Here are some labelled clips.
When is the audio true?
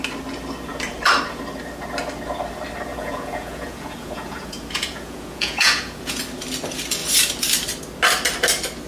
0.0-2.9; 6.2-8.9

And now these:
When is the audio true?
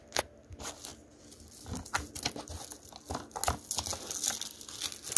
0.0-5.2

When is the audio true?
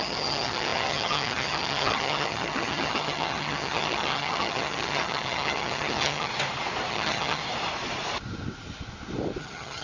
6.3-6.9; 7.4-9.4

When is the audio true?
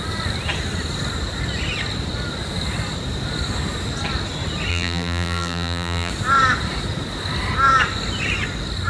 0.0-4.7; 6.1-8.9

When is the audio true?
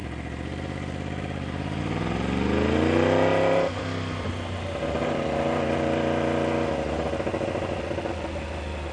0.0-8.9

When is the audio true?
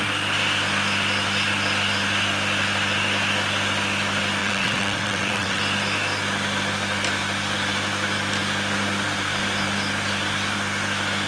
0.0-4.4; 5.6-11.3